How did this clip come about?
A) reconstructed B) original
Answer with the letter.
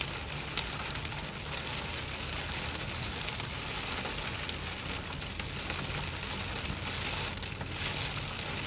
B